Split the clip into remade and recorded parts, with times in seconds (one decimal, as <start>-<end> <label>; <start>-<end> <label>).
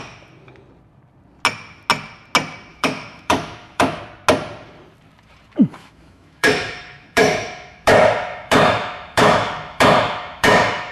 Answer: 0.0-2.7 recorded; 2.7-4.0 remade; 4.0-5.8 recorded; 5.8-10.9 remade